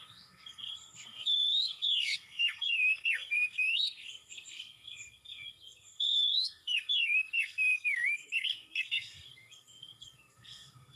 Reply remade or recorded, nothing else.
remade